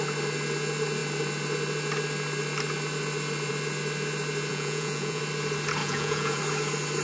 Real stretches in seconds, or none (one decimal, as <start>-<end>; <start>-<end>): 0.0-4.5; 5.2-5.8; 6.4-7.0